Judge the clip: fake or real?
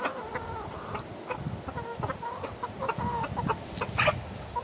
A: real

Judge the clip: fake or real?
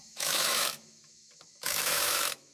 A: fake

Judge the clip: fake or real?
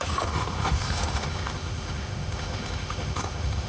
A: fake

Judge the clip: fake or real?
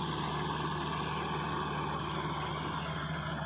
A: real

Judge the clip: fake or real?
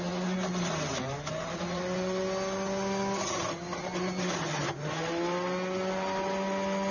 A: real